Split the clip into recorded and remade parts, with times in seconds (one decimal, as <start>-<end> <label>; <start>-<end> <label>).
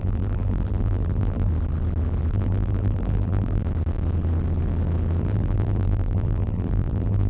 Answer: 0.0-1.5 remade; 1.5-2.3 recorded; 2.3-3.6 remade; 3.6-5.2 recorded; 5.2-7.3 remade